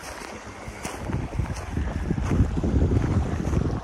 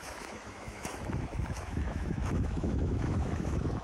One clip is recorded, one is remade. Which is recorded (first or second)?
first